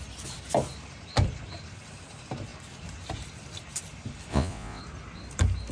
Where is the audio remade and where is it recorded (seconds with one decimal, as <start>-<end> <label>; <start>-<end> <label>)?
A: 0.0-4.3 recorded; 4.3-4.8 remade; 4.8-5.7 recorded